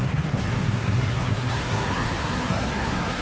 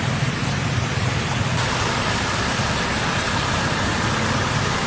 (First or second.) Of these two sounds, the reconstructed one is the first